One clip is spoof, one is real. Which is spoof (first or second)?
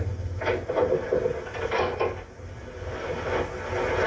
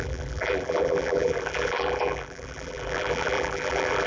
second